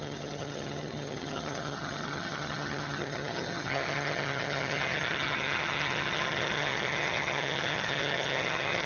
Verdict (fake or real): fake